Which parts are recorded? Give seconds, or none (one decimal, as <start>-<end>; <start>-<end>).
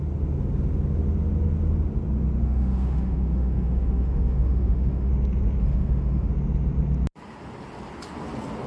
0.0-2.4; 5.1-5.6; 6.3-8.7